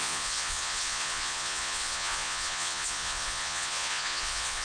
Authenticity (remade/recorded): remade